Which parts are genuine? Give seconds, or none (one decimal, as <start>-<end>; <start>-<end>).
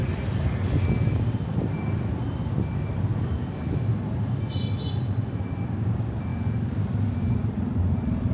0.0-8.3